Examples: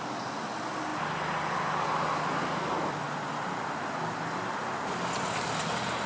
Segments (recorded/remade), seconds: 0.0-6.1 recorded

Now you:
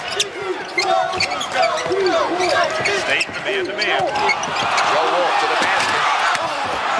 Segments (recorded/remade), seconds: 0.0-7.0 recorded

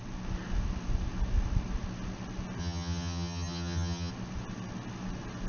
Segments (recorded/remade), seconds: 0.0-2.6 recorded; 2.6-4.1 remade; 4.1-5.5 recorded

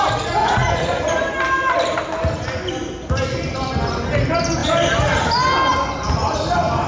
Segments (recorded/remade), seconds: 0.0-0.4 recorded; 0.4-1.0 remade; 1.0-6.9 recorded

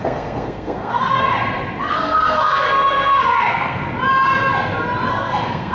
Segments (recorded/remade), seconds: 0.0-1.3 remade; 1.3-1.8 recorded; 1.8-3.8 remade; 3.8-5.1 recorded; 5.1-5.7 remade

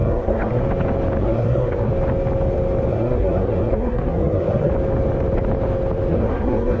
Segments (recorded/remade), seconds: 0.0-0.6 remade; 0.6-1.2 recorded; 1.2-1.9 remade; 1.9-2.9 recorded; 2.9-4.7 remade; 4.7-6.1 recorded; 6.1-6.8 remade